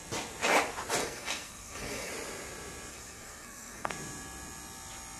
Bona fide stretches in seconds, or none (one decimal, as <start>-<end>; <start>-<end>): 0.0-1.0; 2.1-2.9; 3.9-5.2